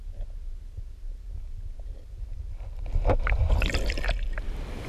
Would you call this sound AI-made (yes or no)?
no